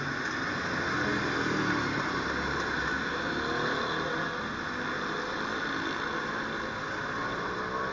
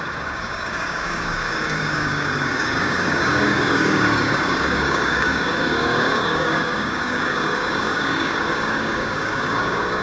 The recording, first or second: first